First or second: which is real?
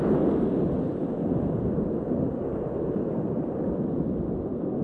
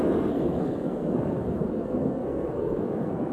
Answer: first